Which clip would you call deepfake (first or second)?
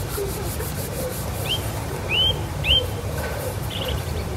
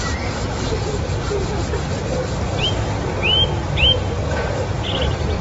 first